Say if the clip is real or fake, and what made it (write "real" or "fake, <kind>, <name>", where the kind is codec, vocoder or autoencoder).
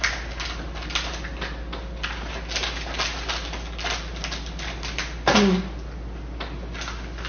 real